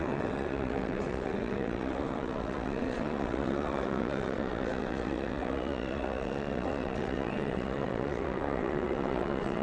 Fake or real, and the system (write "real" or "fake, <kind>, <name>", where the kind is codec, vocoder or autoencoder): fake, vocoder, WaveNeXt